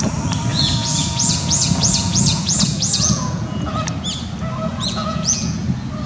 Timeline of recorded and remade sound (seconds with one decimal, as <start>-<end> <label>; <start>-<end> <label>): 0.0-0.5 recorded; 0.5-3.7 remade; 3.7-4.7 recorded; 4.7-5.6 remade; 5.6-6.1 recorded